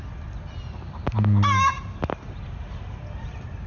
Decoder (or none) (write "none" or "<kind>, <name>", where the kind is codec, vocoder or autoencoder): none